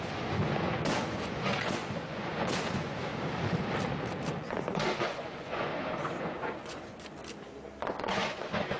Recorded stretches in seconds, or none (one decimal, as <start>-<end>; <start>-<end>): 3.1-4.3; 5.7-6.2; 7.2-8.0